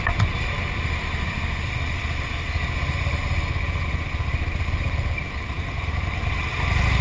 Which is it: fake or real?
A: real